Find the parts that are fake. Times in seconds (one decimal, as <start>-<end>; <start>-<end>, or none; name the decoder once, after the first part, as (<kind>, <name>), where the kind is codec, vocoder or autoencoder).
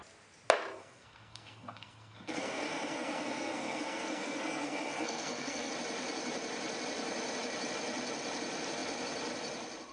0.8-5.7 (codec, SNAC)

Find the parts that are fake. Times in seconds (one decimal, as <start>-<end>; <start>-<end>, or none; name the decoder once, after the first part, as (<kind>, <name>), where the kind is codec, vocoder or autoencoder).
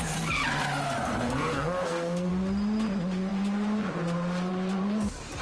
1.1-2.3 (codec, SNAC)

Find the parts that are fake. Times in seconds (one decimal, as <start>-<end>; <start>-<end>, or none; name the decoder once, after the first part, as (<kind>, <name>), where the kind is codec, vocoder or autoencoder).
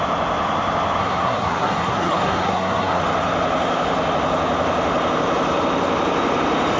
1.0-3.0 (codec, SNAC)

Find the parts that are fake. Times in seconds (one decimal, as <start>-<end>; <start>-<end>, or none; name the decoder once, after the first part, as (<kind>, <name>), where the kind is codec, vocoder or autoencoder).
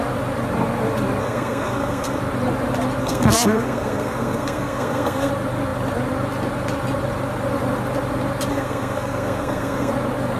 1.2-2.2 (codec, SNAC); 3.0-5.3; 8.5-9.9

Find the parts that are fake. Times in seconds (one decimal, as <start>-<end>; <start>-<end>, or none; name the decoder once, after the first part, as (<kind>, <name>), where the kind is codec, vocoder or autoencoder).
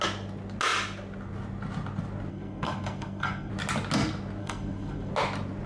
2.3-3.5 (codec, SNAC); 4.4-5.1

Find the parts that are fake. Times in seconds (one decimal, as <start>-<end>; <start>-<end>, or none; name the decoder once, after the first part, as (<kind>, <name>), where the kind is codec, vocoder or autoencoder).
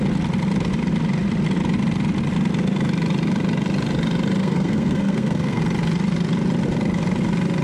4.4-5.6 (codec, SNAC)